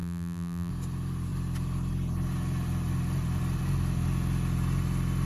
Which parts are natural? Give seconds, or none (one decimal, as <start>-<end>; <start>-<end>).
0.7-5.2